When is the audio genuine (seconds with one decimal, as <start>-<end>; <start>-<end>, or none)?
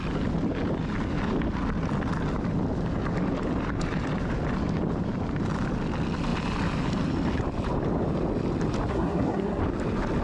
0.0-8.9; 9.6-10.2